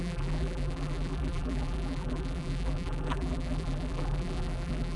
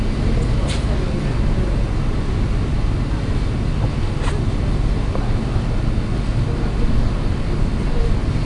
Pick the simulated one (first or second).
first